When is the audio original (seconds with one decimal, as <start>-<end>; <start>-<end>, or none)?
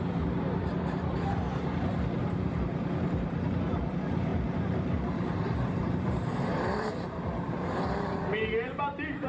1.6-2.2